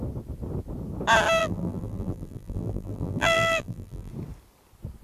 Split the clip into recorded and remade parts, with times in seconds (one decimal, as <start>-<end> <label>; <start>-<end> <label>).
0.0-1.4 recorded; 1.4-4.1 remade; 4.1-5.0 recorded